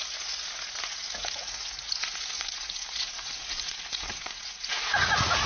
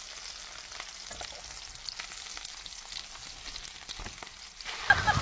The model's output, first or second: first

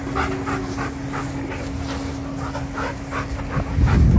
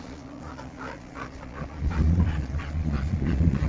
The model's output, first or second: second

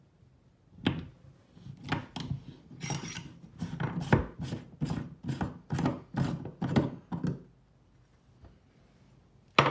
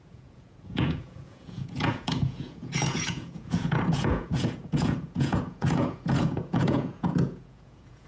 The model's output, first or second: second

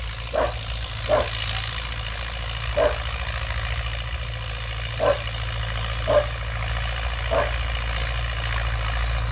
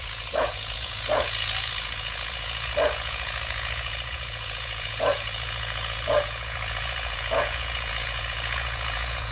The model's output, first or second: second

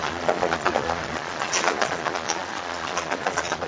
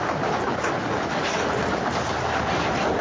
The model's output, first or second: first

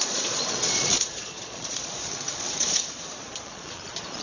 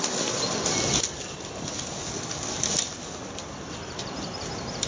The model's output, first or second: first